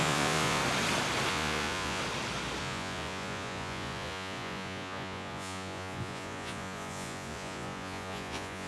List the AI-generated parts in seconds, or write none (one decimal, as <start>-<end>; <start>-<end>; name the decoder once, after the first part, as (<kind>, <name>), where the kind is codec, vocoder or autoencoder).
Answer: 0.0-0.6 (vocoder, Vocos); 1.3-2.0; 2.6-8.7